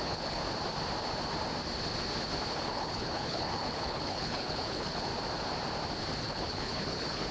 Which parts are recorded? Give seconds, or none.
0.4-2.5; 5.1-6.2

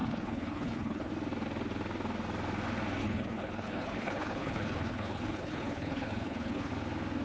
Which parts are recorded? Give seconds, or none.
1.1-3.0; 6.7-7.2